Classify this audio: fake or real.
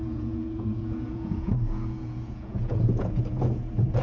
fake